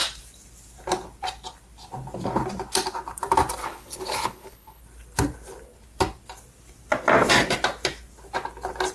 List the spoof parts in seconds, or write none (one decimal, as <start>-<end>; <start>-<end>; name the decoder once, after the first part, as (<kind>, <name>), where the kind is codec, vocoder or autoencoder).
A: 3.6-4.8 (codec, HILCodec)